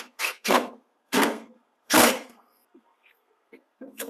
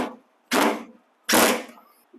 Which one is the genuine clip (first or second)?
second